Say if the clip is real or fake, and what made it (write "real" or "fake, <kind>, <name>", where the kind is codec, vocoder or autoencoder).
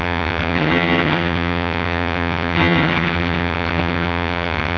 fake, vocoder, HiFi-GAN